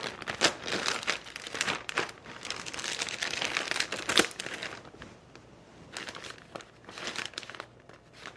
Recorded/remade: recorded